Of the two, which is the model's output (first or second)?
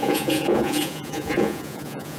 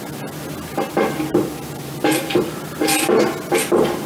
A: first